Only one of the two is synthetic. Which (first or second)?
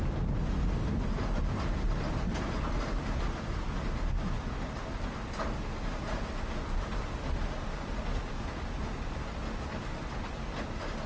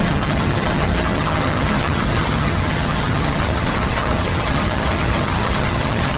second